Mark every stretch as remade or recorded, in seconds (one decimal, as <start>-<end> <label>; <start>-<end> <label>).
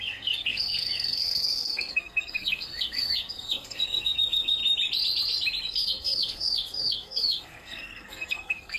0.0-4.6 remade; 4.6-5.6 recorded; 5.6-8.8 remade